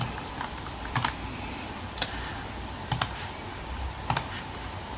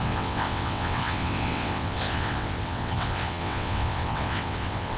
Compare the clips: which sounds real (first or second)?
first